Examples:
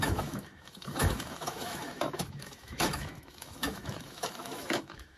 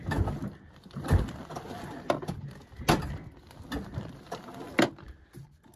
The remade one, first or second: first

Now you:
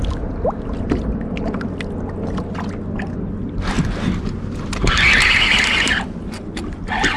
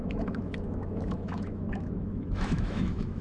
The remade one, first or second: second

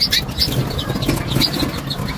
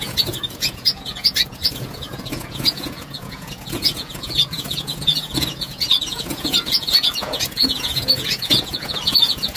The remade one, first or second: second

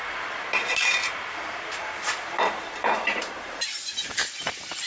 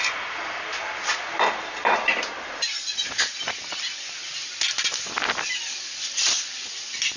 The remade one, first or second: first